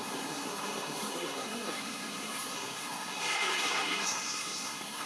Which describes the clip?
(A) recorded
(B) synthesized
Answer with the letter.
B